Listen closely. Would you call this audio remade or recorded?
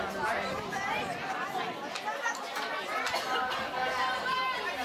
recorded